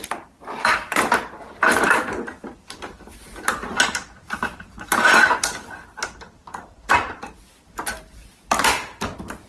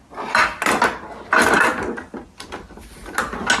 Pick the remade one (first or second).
first